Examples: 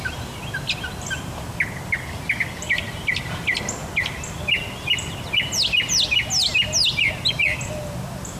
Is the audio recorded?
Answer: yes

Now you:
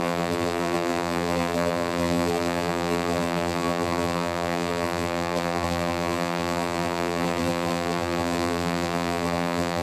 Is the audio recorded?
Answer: no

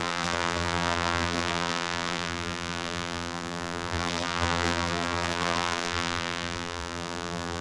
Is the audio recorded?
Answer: no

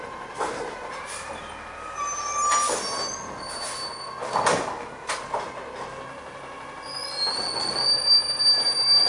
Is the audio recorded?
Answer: yes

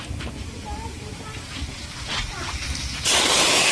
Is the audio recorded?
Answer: no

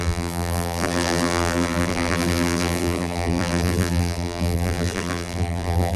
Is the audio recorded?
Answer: no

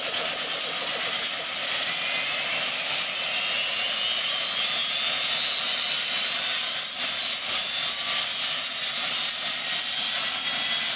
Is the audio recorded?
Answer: yes